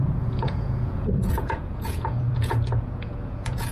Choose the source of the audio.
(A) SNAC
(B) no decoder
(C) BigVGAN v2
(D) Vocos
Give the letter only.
D